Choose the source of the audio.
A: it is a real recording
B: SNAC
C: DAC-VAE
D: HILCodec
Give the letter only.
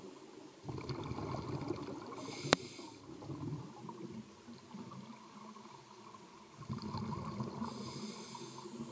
A